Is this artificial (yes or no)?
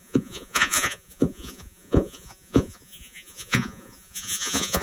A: yes